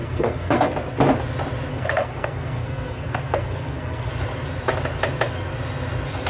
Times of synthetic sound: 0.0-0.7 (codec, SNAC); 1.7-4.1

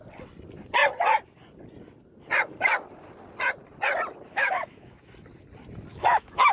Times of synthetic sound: 4.3-5.1 (autoencoder, DAC-VAE); 5.9-6.5

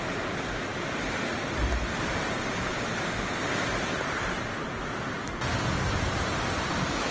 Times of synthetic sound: 0.0-7.1 (vocoder, BigVGAN v2)

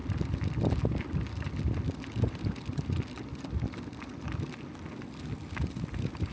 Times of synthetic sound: none

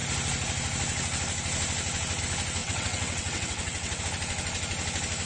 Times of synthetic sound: 2.6-4.0 (vocoder, WaveNeXt)

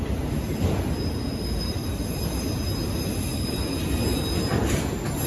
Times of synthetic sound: none